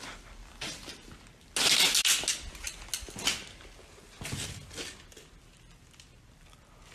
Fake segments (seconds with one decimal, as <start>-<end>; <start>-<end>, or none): none